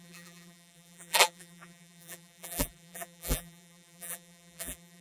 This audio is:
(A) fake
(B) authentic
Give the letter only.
A